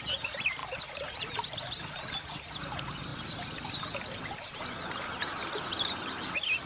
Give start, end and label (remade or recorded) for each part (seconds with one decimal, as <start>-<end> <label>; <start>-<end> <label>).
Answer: 0.0-6.7 recorded